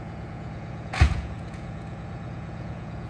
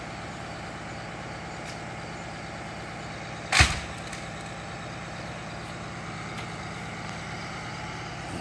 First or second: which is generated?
first